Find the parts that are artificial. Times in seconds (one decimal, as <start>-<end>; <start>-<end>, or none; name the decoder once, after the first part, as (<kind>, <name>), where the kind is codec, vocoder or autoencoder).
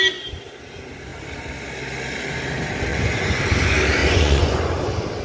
2.9-3.4 (vocoder, Vocos); 4.0-4.6